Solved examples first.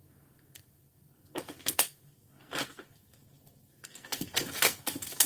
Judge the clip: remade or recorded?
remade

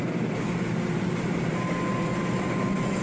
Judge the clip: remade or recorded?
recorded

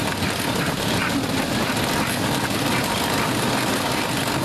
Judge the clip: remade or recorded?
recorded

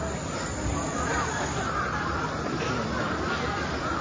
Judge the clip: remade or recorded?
remade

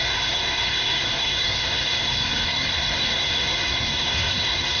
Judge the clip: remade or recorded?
remade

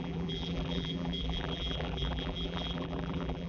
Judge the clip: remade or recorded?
remade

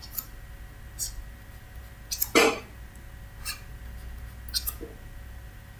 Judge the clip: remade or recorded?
recorded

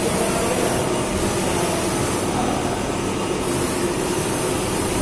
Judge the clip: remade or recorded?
recorded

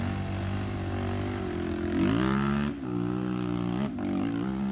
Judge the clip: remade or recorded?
recorded